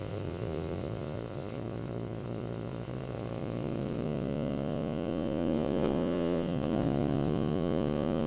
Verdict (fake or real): fake